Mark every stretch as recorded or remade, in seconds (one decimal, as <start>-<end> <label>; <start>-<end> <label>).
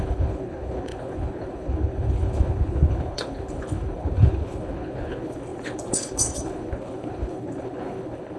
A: 0.0-8.4 remade